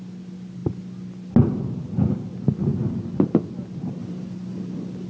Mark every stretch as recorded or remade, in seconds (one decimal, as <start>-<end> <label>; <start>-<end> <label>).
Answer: 0.0-2.7 recorded; 2.7-3.4 remade; 3.4-4.0 recorded; 4.0-5.1 remade